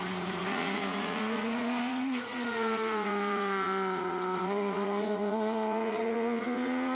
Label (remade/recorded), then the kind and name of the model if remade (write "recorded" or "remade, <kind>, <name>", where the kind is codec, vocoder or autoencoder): remade, vocoder, Vocos